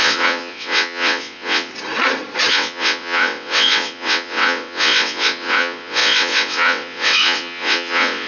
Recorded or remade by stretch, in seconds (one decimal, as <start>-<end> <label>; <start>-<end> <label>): 0.0-1.7 remade; 1.7-2.5 recorded; 2.5-8.3 remade